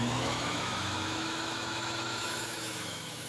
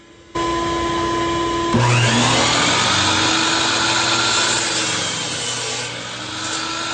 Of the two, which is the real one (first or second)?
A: second